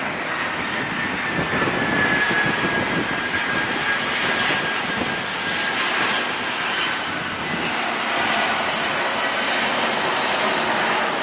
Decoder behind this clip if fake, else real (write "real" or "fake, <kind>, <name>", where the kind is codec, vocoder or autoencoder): real